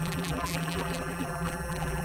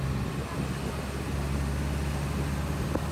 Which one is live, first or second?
second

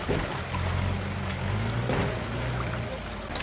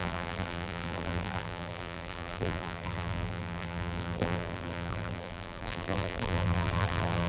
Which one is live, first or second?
first